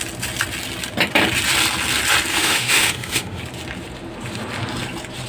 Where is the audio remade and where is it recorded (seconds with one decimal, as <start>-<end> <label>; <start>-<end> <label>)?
0.0-2.3 recorded; 2.3-3.4 remade; 3.4-5.3 recorded